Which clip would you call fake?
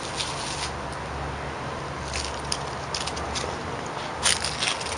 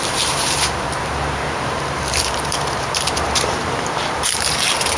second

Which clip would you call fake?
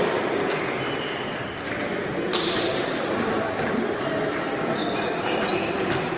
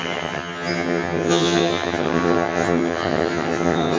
second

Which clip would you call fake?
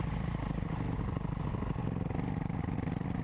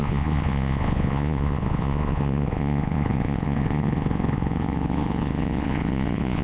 second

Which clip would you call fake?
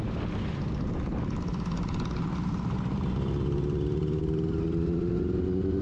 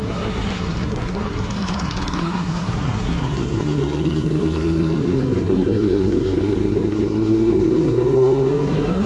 second